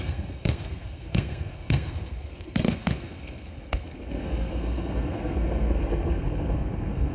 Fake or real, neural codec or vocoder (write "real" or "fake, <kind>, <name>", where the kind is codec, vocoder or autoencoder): fake, codec, SNAC